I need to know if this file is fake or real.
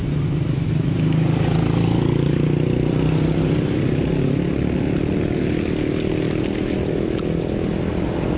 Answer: real